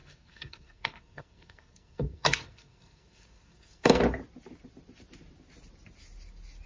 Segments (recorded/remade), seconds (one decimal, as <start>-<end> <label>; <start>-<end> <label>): 0.0-4.0 remade; 4.0-6.7 recorded